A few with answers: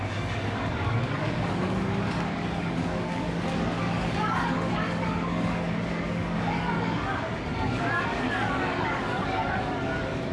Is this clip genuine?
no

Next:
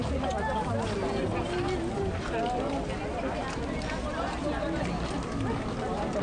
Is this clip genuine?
yes